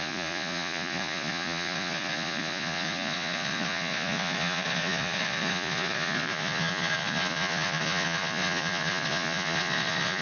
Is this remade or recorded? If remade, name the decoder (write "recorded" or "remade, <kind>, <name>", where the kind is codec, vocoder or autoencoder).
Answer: remade, vocoder, Vocos